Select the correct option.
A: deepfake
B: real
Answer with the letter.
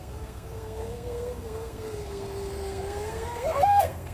A